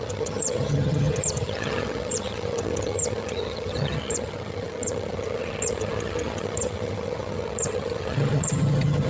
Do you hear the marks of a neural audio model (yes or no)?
yes